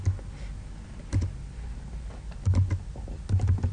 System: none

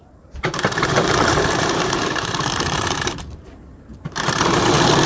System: vocoder, BigVGAN v2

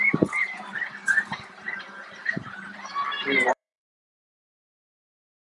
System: vocoder, BigVGAN v2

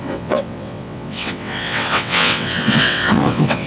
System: vocoder, WaveNeXt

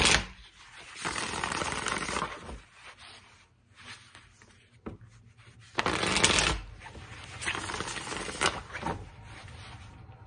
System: none